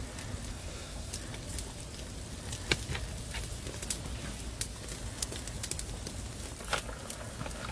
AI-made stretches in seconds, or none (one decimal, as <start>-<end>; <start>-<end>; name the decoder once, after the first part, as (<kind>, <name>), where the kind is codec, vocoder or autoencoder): 0.5-1.1 (codec, SNAC)